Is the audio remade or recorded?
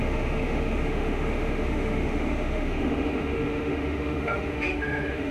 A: remade